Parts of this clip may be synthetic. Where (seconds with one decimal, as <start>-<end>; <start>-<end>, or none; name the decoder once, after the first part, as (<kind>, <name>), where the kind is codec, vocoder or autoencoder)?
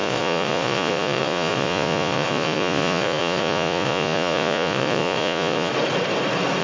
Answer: 0.0-5.7 (vocoder, Vocos)